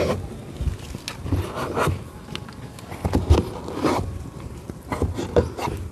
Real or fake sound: real